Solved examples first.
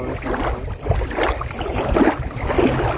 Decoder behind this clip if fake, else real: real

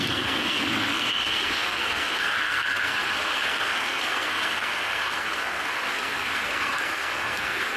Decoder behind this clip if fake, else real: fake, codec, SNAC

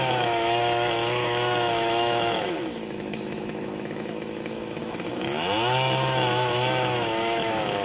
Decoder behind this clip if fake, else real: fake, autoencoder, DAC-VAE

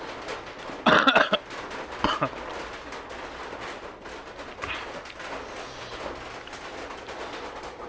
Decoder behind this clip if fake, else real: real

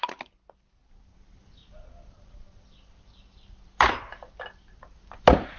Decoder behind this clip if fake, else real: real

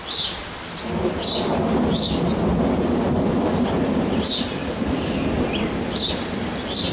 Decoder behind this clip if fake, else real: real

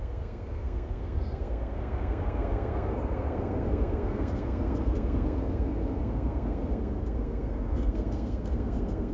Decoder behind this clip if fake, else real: fake, codec, SNAC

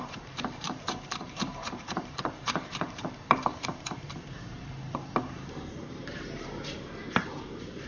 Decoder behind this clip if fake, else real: fake, vocoder, BigVGAN v2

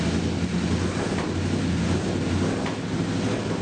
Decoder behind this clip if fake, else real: real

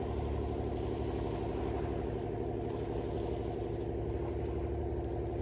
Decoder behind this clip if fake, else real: real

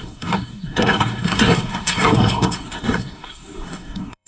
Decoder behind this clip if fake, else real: fake, codec, SNAC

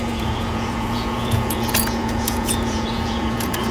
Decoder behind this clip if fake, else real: fake, vocoder, Vocos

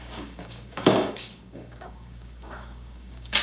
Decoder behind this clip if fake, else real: fake, codec, DAC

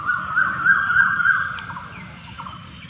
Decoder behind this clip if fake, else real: real